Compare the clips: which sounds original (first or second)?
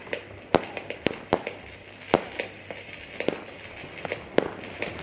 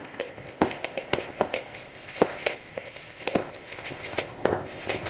first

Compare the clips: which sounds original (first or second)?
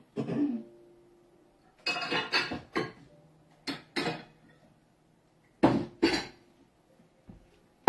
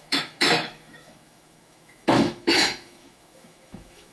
first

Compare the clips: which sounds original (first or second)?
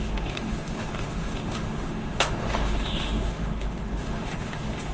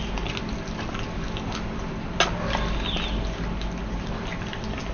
second